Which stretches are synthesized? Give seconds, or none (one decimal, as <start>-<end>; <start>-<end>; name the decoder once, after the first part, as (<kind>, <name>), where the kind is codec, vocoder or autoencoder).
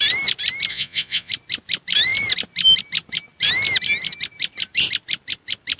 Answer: 0.7-1.3 (vocoder, Vocos)